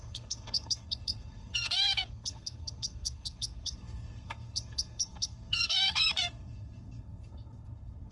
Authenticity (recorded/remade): remade